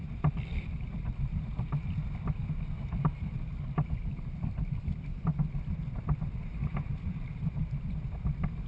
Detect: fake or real real